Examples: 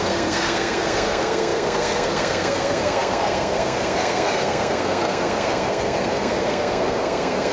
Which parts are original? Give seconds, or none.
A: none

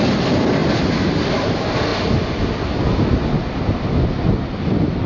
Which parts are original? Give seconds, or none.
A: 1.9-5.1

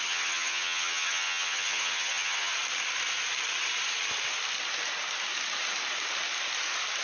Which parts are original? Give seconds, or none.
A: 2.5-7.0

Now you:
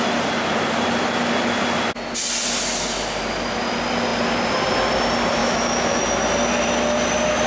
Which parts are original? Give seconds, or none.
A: 0.0-5.4; 6.0-7.5